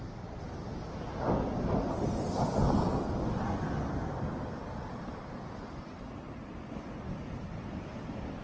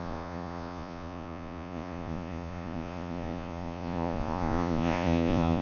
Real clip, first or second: first